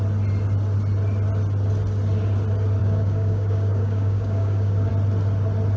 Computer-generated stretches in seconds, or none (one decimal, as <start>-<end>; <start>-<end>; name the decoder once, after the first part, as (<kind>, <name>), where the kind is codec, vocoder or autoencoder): 2.8-4.9 (codec, DAC)